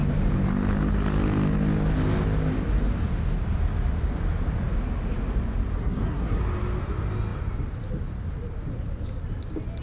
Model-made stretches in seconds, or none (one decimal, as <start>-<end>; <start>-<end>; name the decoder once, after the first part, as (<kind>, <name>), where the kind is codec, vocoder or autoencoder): 5.8-6.4 (codec, SNAC)

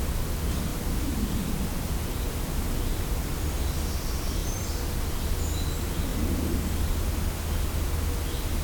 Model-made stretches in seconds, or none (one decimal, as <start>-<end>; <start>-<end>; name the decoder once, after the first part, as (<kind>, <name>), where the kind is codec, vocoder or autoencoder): 0.7-1.5 (vocoder, BigVGAN v2); 4.4-5.3

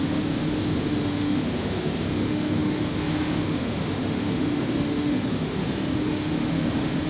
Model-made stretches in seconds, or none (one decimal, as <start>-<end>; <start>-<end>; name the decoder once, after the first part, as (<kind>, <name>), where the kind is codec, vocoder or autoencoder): 0.0-7.1 (autoencoder, DAC-VAE)

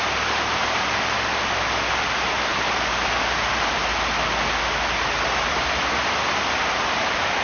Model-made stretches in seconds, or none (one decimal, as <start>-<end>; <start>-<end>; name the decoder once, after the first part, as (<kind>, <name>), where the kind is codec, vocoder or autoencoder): 0.0-3.9 (vocoder, BigVGAN v2); 7.0-7.4